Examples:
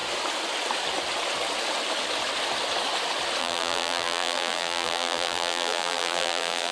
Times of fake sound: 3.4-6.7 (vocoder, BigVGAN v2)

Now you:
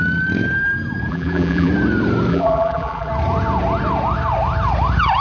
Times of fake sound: 1.1-1.7 (vocoder, BigVGAN v2); 2.3-3.1

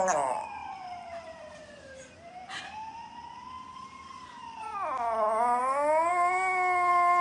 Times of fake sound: 0.6-2.6 (vocoder, BigVGAN v2)

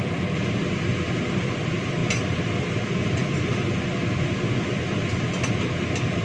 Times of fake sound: 3.2-4.0 (vocoder, BigVGAN v2)

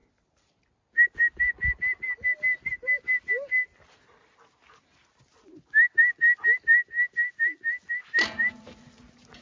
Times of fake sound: none